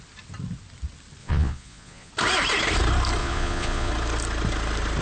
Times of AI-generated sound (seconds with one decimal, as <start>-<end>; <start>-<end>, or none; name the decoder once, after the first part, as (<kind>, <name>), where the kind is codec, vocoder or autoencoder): 1.2-2.1 (vocoder, Vocos); 3.2-3.9